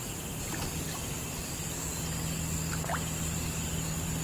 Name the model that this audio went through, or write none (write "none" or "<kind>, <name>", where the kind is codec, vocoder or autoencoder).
none